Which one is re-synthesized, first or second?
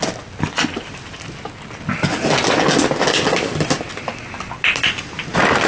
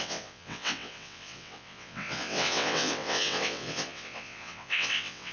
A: second